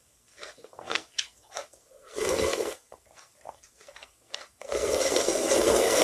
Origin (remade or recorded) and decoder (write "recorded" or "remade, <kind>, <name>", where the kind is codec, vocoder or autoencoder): remade, codec, SNAC